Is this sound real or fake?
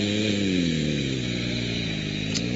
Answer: fake